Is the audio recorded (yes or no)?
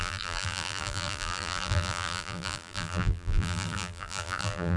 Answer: no